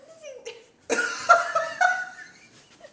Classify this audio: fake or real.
real